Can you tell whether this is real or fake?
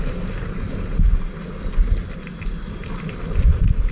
real